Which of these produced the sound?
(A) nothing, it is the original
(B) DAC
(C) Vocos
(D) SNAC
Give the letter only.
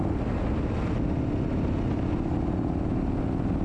A